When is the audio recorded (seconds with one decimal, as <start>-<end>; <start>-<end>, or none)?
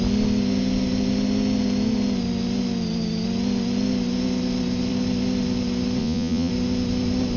0.0-6.0; 6.5-7.4